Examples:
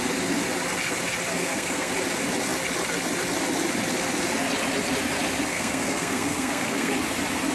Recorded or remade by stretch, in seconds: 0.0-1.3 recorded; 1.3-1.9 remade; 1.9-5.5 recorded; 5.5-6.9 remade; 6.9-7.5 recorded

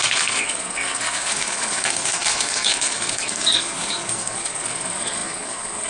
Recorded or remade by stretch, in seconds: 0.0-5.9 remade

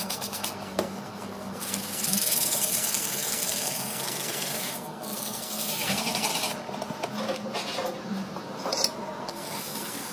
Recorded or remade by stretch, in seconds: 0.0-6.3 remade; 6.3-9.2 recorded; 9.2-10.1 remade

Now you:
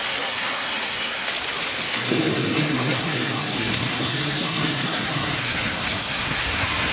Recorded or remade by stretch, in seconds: 0.0-1.3 remade; 1.3-1.9 recorded; 1.9-6.9 remade

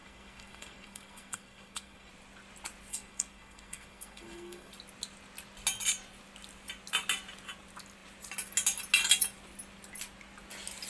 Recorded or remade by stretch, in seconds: 0.0-2.1 remade; 2.1-2.9 recorded; 2.9-4.7 remade; 4.7-10.9 recorded